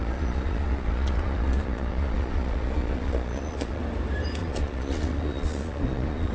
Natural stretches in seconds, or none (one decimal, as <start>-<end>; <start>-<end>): 3.8-4.4